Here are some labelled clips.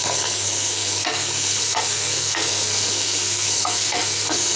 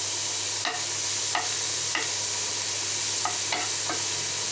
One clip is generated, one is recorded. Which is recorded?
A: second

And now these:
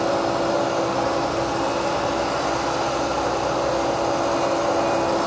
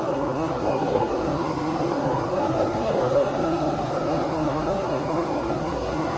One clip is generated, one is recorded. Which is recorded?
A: first